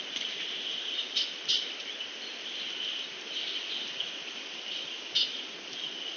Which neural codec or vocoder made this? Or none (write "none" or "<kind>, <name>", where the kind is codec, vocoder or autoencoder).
none